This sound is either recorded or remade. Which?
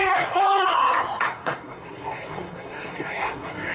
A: remade